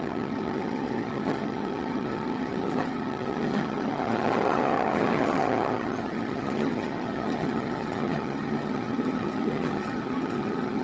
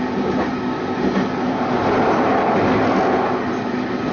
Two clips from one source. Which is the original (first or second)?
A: second